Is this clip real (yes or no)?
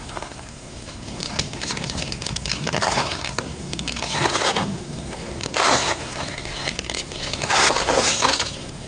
no